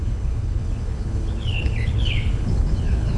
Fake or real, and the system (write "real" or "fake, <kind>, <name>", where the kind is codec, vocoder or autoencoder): fake, codec, HILCodec